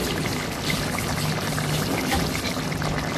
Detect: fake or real real